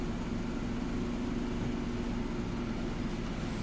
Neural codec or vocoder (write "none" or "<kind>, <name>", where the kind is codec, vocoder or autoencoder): none